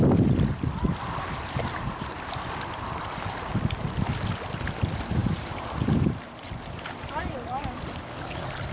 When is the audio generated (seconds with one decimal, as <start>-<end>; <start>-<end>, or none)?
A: 0.0-8.7